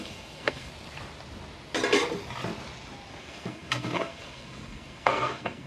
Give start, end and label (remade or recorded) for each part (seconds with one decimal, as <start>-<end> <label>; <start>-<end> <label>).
0.0-0.7 remade; 0.7-3.2 recorded; 3.2-5.7 remade